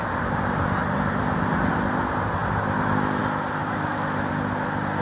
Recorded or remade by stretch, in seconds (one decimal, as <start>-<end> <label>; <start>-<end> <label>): 0.0-3.6 recorded; 3.6-4.3 remade; 4.3-5.0 recorded

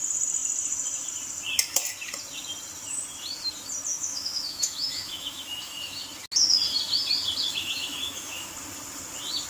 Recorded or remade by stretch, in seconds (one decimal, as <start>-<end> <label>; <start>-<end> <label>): 0.0-3.9 recorded; 3.9-6.0 remade; 6.0-7.5 recorded; 7.5-8.5 remade; 8.5-9.5 recorded

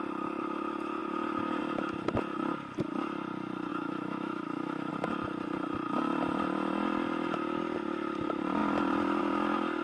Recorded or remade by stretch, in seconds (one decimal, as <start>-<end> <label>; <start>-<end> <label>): 0.0-3.7 recorded; 3.7-4.9 remade; 4.9-9.8 recorded

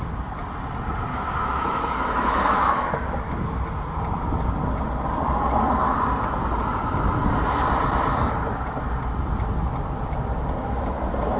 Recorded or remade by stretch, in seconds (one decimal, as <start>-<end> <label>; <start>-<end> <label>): 0.0-1.1 recorded; 1.1-2.9 remade; 2.9-11.4 recorded

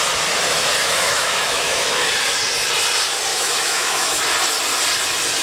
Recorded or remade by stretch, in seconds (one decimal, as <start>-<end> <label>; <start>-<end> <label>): 0.0-0.8 recorded; 0.8-2.1 remade; 2.1-3.3 recorded; 3.3-4.2 remade; 4.2-5.4 recorded